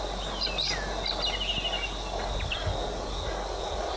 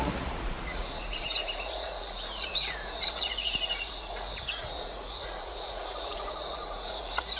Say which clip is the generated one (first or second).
second